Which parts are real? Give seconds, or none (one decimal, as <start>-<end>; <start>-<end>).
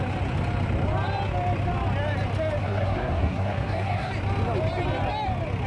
0.0-2.6; 4.1-5.7